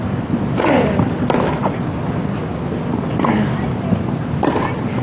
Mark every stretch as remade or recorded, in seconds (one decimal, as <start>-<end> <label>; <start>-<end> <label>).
0.0-5.0 recorded